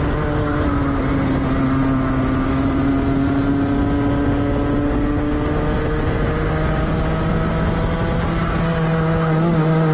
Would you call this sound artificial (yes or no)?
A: no